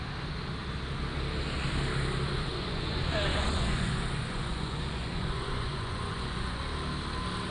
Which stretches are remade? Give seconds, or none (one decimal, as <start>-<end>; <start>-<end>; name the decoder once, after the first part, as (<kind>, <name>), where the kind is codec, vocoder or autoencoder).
2.5-6.6 (vocoder, Vocos)